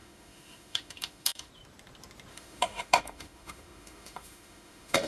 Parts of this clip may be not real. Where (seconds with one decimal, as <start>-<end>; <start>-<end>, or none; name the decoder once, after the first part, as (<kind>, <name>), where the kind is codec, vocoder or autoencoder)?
0.0-1.5 (autoencoder, DAC-VAE); 2.3-5.1